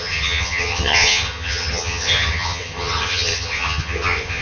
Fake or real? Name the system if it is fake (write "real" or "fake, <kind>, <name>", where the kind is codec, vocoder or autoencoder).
fake, vocoder, HiFi-GAN